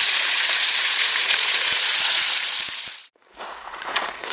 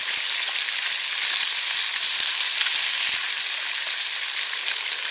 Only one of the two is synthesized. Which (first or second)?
first